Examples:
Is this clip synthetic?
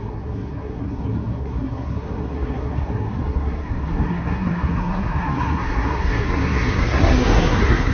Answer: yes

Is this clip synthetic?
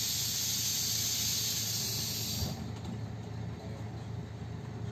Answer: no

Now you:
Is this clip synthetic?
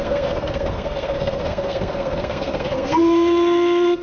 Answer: yes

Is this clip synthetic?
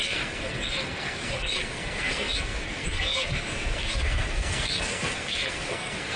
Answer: yes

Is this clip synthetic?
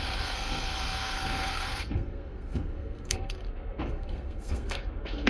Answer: yes